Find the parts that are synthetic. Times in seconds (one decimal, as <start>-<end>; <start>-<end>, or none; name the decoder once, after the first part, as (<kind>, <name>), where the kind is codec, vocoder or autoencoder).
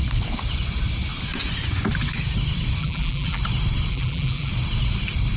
2.8-3.4 (vocoder, BigVGAN v2); 3.9-4.5